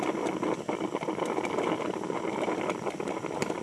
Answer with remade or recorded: recorded